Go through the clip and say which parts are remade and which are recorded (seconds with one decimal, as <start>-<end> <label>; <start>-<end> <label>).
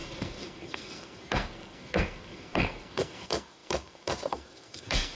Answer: 0.0-5.2 remade